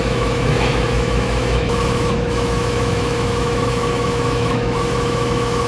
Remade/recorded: remade